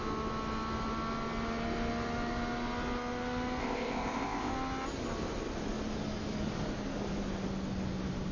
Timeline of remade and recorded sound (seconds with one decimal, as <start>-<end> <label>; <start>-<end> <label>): 0.0-3.6 recorded; 3.6-4.5 remade; 4.5-8.3 recorded

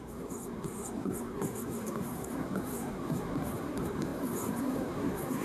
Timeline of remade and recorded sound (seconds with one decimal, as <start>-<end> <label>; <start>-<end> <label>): 0.0-5.4 remade

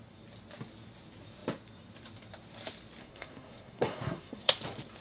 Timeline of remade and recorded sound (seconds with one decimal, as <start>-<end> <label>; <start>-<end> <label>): 0.0-3.0 recorded; 3.0-4.5 remade; 4.5-5.0 recorded

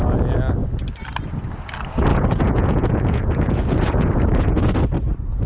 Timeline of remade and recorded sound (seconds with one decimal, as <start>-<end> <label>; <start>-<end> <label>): 0.0-2.1 recorded; 2.1-4.7 remade; 4.7-5.5 recorded

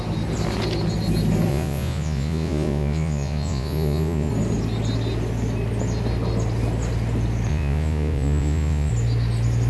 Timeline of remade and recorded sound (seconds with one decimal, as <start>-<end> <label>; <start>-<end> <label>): 0.0-1.5 recorded; 1.5-4.3 remade; 4.3-7.5 recorded; 7.5-8.9 remade; 8.9-9.7 recorded

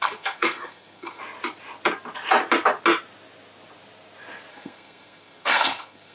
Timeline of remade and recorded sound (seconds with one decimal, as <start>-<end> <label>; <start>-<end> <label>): 0.0-1.2 remade; 1.2-4.5 recorded; 4.5-6.1 remade

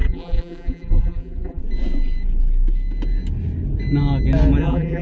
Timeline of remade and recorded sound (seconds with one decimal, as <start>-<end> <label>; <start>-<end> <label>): 0.0-1.6 remade; 1.6-4.6 recorded; 4.6-5.0 remade